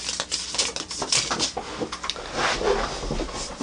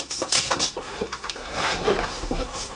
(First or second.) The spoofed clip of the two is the second